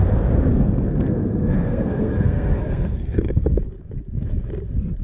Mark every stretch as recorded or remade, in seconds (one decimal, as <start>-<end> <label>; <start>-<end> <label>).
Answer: 0.0-0.5 recorded; 0.5-3.5 remade; 3.5-5.0 recorded